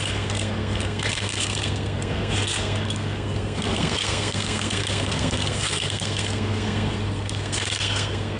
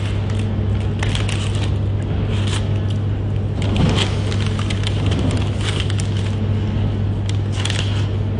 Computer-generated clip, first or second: first